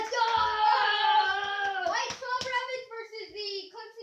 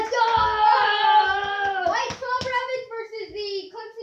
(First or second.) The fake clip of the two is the first